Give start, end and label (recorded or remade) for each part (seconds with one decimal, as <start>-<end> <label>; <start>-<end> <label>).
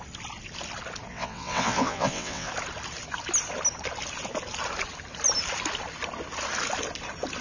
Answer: 0.0-1.1 recorded; 1.1-2.5 remade; 2.5-7.4 recorded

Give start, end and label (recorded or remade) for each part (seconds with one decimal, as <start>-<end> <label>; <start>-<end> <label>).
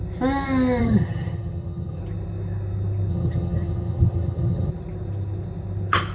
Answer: 0.0-0.8 recorded; 0.8-2.0 remade; 2.0-3.1 recorded; 3.1-4.7 remade; 4.7-6.1 recorded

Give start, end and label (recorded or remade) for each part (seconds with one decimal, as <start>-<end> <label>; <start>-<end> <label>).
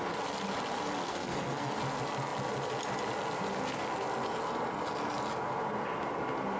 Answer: 0.0-1.1 recorded; 1.1-1.7 remade; 1.7-6.6 recorded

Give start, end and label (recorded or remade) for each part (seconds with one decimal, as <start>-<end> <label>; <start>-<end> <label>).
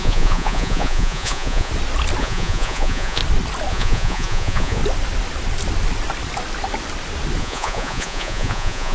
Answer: 0.0-1.7 remade; 1.7-2.2 recorded; 2.2-3.2 remade; 3.2-3.7 recorded; 3.7-4.8 remade; 4.8-7.4 recorded; 7.4-8.9 remade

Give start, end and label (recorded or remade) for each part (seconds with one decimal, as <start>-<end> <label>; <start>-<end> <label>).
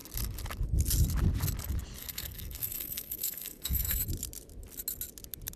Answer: 0.0-2.0 recorded; 2.0-4.0 remade; 4.0-5.6 recorded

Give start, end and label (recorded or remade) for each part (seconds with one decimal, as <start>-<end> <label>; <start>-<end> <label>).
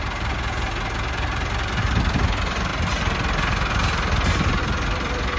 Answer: 0.0-5.4 recorded